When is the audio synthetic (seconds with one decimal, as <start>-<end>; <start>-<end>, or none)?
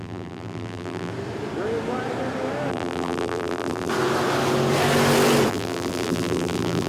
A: 0.0-1.1; 2.7-3.9; 5.5-6.9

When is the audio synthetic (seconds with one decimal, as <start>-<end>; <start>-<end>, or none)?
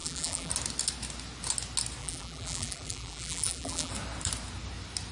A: 0.0-0.5; 2.0-3.9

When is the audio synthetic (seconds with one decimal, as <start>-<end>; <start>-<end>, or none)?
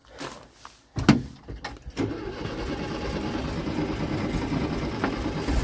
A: 2.6-5.6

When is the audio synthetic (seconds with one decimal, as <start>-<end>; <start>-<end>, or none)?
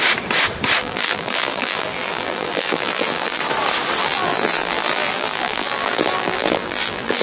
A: 0.8-3.4; 4.0-7.2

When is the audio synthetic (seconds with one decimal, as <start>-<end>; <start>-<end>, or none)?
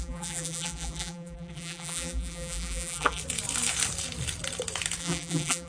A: 0.0-3.2; 5.0-5.7